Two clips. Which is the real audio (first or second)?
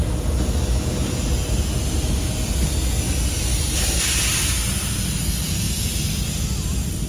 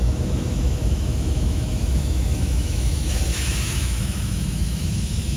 first